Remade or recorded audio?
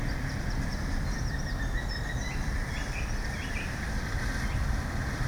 remade